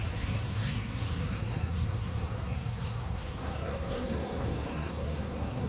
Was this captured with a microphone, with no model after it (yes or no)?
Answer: no